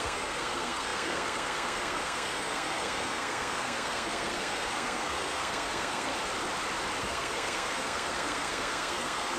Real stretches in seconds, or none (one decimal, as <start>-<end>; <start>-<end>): 6.1-7.0